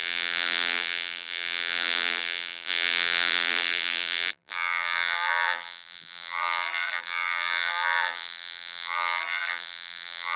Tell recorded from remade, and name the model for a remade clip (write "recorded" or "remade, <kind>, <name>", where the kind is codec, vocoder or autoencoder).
remade, vocoder, BigVGAN v2